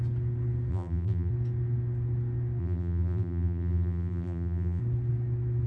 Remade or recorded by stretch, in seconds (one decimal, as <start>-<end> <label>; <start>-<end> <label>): 0.0-0.7 recorded; 0.7-1.3 remade; 1.3-2.6 recorded; 2.6-4.8 remade; 4.8-5.7 recorded